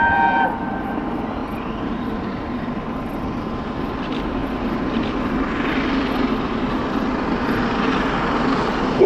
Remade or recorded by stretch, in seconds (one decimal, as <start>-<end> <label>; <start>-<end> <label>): 0.0-1.4 remade; 1.4-2.1 recorded; 2.1-6.8 remade; 6.8-9.1 recorded